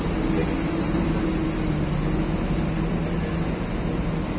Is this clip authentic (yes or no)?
yes